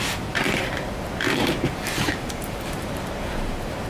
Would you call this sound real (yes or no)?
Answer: no